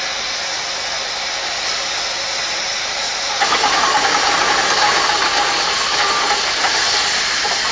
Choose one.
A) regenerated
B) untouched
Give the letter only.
B